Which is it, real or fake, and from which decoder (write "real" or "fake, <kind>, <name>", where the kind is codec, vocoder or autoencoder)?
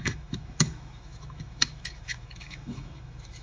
fake, autoencoder, DAC-VAE